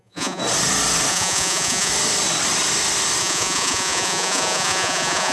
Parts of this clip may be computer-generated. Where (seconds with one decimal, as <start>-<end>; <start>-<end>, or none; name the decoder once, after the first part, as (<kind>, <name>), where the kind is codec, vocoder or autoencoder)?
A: 0.0-0.4 (vocoder, Vocos); 1.1-1.9; 3.2-5.3